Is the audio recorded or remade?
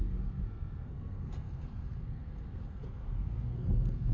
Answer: remade